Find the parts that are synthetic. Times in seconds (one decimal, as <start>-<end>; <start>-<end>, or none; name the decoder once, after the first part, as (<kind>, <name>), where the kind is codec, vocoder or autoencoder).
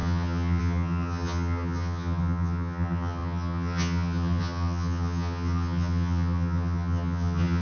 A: 0.0-7.6 (vocoder, HiFi-GAN)